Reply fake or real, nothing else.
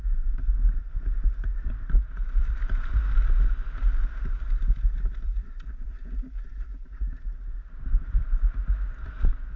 fake